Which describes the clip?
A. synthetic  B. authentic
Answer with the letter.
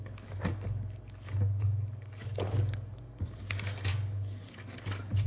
A